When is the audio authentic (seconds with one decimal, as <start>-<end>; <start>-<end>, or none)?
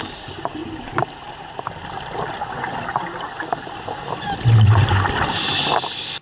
0.0-6.2